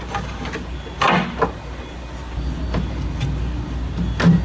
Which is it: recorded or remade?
recorded